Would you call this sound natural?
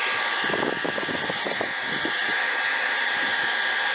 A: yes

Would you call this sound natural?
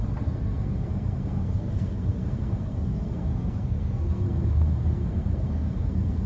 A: no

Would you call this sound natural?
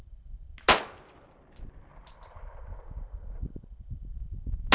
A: yes